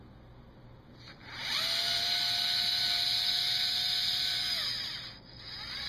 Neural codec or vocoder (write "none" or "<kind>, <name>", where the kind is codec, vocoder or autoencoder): none